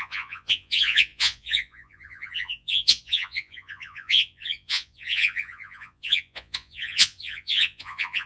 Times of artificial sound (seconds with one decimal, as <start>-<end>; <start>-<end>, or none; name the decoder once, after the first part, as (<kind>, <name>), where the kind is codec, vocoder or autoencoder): 0.0-8.3 (vocoder, Vocos)